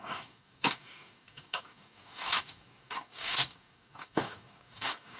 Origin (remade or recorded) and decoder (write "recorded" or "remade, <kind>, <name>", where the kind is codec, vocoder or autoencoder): remade, codec, DAC